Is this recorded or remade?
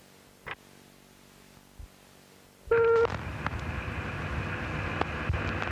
recorded